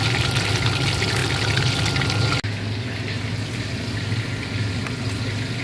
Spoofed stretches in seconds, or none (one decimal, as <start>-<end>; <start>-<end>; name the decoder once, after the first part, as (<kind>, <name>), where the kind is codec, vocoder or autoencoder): none